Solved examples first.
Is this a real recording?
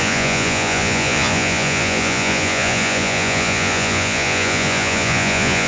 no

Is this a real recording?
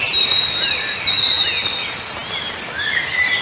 yes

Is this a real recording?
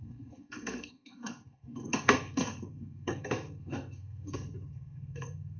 no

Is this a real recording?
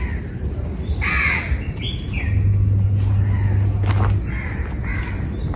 yes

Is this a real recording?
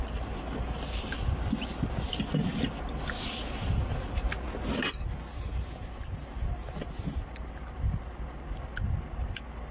yes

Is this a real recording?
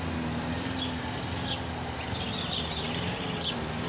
yes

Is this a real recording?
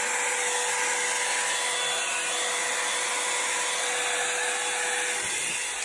yes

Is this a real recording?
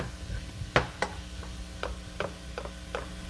yes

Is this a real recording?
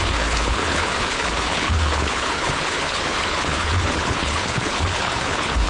no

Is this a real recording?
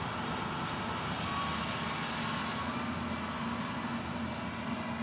yes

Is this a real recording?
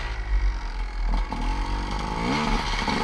yes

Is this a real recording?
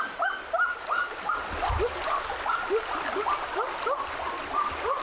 yes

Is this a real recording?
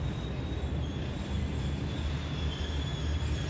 yes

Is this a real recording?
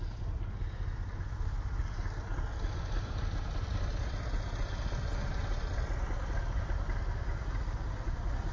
yes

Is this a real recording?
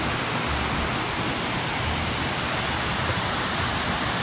yes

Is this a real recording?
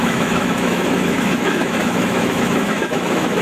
no